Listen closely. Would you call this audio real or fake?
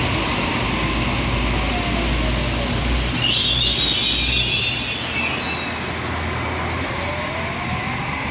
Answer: real